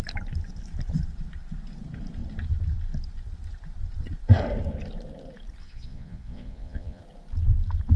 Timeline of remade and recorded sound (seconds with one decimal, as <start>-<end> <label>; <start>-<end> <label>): 0.0-5.6 recorded; 5.6-7.0 remade; 7.0-8.0 recorded